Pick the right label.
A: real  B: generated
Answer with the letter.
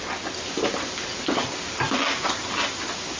A